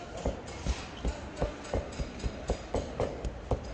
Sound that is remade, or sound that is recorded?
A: recorded